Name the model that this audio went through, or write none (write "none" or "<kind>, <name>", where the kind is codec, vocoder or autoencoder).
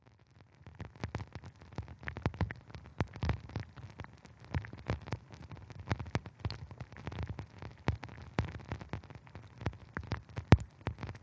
none